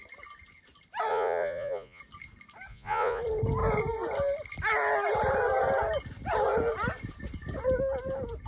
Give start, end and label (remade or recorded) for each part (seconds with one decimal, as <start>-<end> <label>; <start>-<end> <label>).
0.0-1.1 recorded; 1.1-2.0 remade; 2.0-2.7 recorded; 2.7-3.2 remade; 3.2-8.5 recorded